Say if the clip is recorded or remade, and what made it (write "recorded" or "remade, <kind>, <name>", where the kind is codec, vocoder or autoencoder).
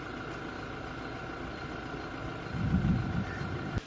recorded